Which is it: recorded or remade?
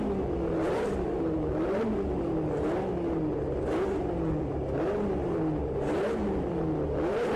recorded